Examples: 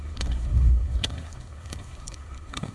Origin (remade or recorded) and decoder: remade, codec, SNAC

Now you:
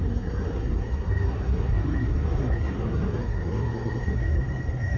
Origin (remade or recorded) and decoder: remade, codec, SNAC